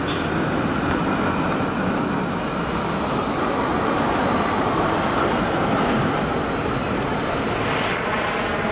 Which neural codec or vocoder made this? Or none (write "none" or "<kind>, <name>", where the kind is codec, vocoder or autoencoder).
none